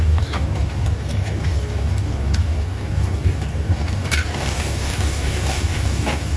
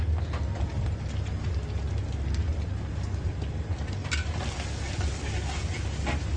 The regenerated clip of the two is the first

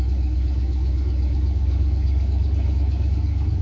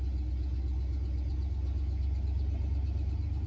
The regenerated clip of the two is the first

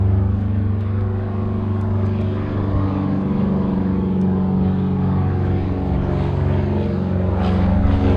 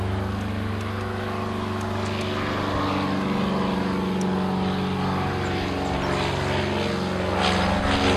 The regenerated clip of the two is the first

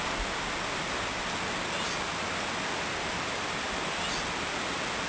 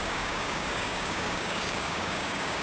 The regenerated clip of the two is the second